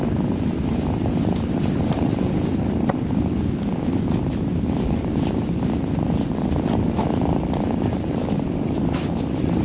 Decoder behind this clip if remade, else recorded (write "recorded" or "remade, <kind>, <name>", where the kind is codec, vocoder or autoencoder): remade, vocoder, BigVGAN v2